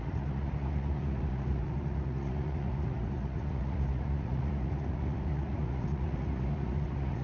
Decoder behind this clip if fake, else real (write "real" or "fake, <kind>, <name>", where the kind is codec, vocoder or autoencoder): fake, vocoder, Vocos